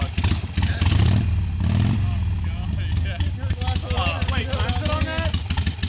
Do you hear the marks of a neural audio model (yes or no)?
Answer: no